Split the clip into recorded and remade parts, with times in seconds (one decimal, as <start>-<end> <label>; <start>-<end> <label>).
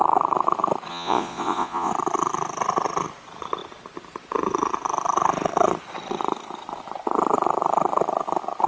0.0-0.9 recorded; 0.9-1.9 remade; 1.9-8.7 recorded